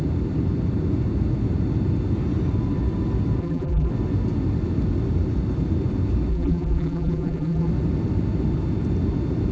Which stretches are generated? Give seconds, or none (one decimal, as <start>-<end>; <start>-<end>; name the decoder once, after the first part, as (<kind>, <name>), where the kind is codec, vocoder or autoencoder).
3.4-3.9 (vocoder, BigVGAN v2); 6.3-7.7